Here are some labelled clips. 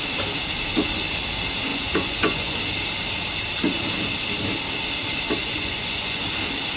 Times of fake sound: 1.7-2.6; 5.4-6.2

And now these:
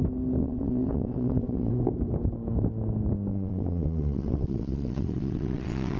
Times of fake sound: 0.4-1.7; 3.3-6.0

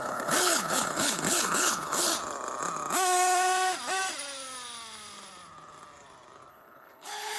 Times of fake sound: 0.0-2.1; 6.5-7.4

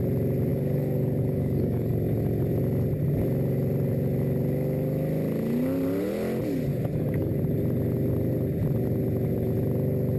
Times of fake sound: 0.5-1.9; 6.7-7.3

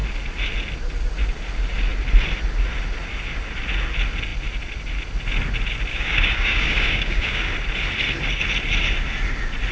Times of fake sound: 5.9-7.5

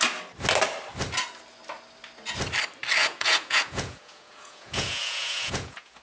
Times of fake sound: 3.0-6.0

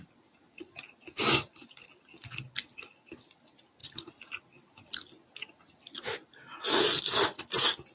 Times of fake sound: none

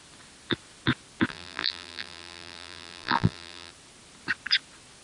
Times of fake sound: 1.3-3.7